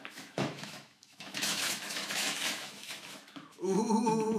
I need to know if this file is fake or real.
fake